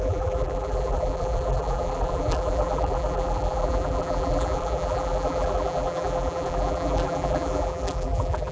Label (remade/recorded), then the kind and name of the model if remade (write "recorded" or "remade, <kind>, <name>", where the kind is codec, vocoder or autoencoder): remade, vocoder, BigVGAN v2